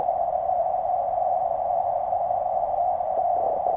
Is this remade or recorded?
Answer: recorded